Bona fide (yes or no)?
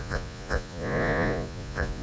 no